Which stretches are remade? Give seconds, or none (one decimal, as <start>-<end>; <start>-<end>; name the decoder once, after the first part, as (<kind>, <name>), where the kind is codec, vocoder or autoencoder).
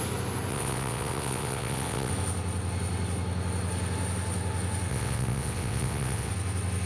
0.5-2.1 (vocoder, WaveNeXt); 4.9-6.3